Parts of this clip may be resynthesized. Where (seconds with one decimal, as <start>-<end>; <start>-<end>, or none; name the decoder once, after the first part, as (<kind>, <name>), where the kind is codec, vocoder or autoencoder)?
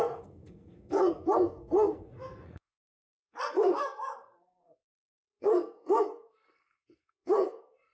0.0-7.9 (codec, SNAC)